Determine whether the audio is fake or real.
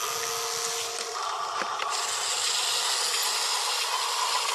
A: real